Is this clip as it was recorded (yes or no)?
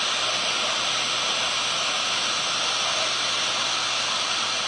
yes